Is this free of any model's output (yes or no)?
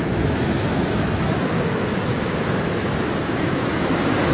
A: no